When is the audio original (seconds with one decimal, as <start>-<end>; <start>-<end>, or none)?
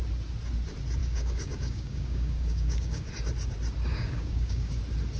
0.0-1.0; 3.1-3.9; 4.8-5.2